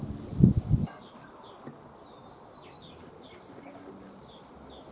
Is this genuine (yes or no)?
yes